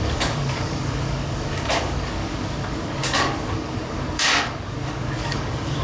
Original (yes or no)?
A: no